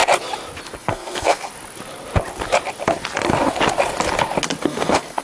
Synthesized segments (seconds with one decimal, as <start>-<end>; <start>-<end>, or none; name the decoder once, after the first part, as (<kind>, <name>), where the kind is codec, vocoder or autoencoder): 0.8-1.5 (codec, SNAC); 4.6-5.2